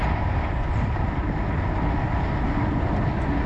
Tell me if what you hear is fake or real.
real